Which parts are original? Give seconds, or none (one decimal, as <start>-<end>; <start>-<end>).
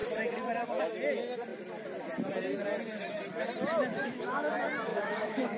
0.0-3.9; 4.5-4.9